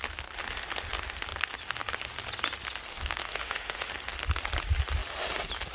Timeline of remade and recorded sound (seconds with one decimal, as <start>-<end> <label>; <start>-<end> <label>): 0.0-2.9 recorded; 2.9-3.9 remade; 3.9-5.7 recorded